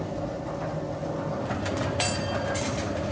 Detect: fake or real real